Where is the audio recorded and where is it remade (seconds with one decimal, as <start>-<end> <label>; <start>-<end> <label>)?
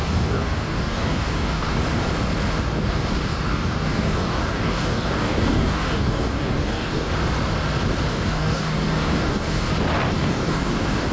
0.0-1.8 remade; 1.8-2.6 recorded; 2.6-7.1 remade; 7.1-8.1 recorded; 8.1-9.7 remade; 9.7-10.3 recorded; 10.3-11.1 remade